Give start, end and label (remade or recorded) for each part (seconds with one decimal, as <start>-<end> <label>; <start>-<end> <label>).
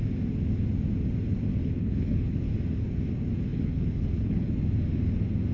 0.0-1.5 recorded; 1.5-2.5 remade; 2.5-3.5 recorded; 3.5-4.5 remade; 4.5-5.5 recorded